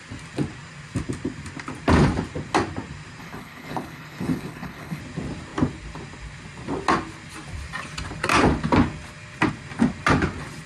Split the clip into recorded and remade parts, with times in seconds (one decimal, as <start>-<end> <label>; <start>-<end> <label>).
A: 0.0-3.2 recorded; 3.2-5.0 remade; 5.0-10.7 recorded